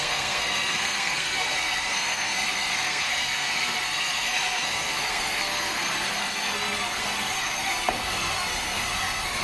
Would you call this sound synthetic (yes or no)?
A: yes